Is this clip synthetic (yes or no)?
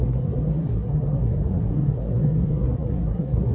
yes